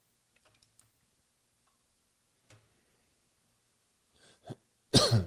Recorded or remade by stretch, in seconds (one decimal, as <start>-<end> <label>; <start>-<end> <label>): 0.0-5.3 recorded